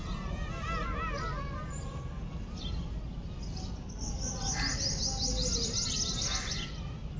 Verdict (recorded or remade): recorded